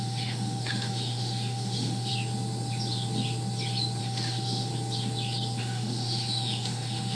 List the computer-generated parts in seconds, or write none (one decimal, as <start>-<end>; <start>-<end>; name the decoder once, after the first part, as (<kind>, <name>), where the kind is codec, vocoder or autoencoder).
0.0-2.1 (autoencoder, DAC-VAE); 4.0-4.7; 5.6-7.1

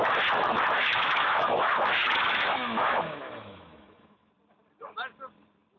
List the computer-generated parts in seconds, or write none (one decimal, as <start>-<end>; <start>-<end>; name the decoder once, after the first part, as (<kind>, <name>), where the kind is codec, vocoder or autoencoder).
0.8-4.3 (autoencoder, DAC-VAE)

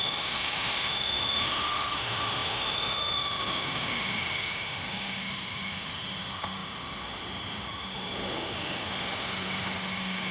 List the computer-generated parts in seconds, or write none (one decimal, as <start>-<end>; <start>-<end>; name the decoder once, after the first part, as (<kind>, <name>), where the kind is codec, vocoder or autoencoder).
0.0-10.3 (autoencoder, DAC-VAE)

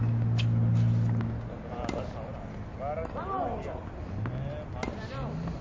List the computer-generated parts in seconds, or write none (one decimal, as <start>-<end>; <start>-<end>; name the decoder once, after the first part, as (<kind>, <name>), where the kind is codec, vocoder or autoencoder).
none

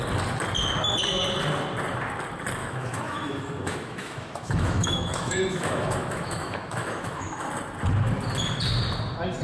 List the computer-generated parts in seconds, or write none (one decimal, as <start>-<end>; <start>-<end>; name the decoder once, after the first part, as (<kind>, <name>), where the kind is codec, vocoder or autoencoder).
2.6-7.5 (autoencoder, DAC-VAE)

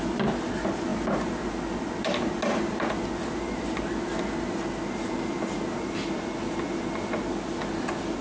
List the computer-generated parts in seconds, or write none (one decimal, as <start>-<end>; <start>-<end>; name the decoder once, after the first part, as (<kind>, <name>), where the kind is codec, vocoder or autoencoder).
none

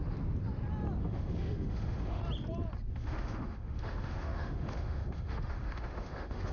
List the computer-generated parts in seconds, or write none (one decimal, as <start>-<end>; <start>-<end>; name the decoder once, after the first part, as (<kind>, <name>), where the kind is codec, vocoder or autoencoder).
1.0-2.2 (autoencoder, DAC-VAE); 2.9-6.5

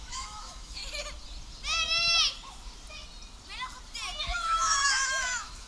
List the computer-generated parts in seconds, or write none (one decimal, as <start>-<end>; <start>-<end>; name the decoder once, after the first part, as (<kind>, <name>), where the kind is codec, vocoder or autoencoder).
0.0-0.8 (autoencoder, DAC-VAE); 4.2-5.7